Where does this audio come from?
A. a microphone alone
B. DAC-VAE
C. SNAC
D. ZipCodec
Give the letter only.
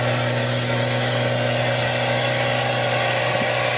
A